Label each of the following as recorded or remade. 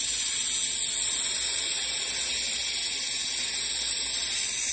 recorded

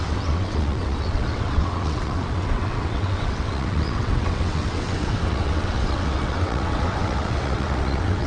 remade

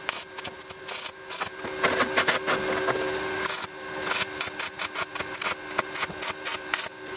recorded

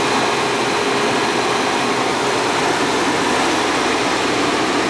recorded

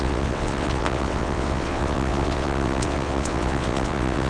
remade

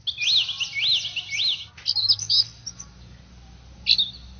recorded